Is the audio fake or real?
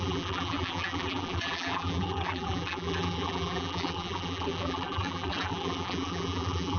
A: fake